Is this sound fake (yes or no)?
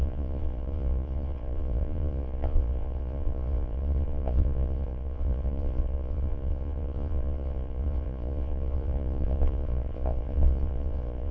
yes